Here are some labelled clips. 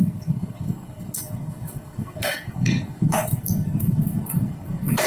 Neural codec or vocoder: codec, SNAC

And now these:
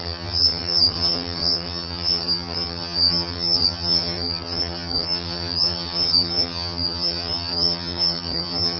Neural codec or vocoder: vocoder, HiFi-GAN